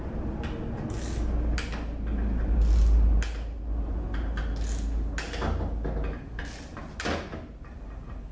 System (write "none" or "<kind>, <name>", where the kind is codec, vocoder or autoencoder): none